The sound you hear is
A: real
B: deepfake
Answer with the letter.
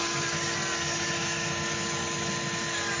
A